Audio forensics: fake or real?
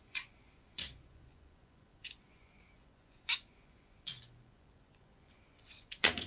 fake